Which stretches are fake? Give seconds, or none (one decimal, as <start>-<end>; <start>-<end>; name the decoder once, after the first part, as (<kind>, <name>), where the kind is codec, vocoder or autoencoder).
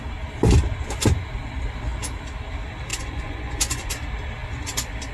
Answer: 2.9-3.9 (vocoder, Vocos)